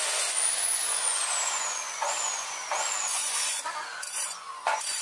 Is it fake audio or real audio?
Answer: fake